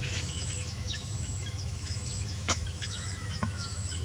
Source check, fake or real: fake